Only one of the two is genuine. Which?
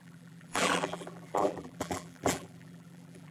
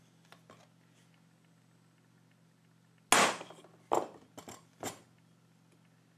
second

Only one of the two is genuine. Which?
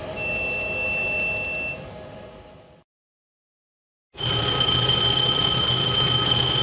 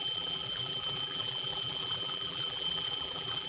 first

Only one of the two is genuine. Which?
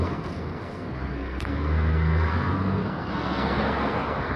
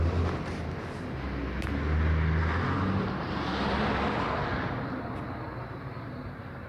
second